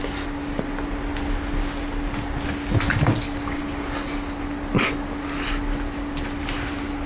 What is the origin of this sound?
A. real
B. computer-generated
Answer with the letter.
A